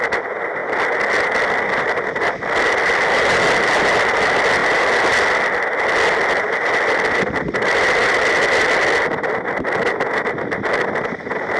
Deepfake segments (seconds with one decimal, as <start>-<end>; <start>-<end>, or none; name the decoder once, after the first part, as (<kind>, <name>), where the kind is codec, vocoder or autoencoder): none

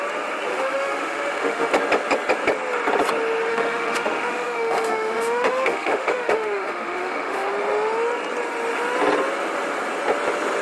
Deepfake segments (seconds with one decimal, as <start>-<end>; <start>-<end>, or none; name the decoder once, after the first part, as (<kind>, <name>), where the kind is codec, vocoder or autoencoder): 0.5-1.7 (autoencoder, DAC-VAE); 3.5-7.5